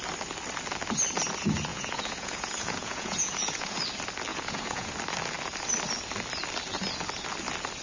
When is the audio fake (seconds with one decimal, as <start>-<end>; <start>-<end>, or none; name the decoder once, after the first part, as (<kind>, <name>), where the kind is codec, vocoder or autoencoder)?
1.7-3.8 (vocoder, Vocos); 4.3-4.9